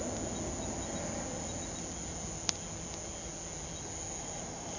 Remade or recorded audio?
recorded